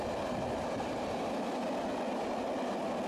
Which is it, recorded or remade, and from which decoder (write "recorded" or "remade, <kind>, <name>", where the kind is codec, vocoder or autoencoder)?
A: recorded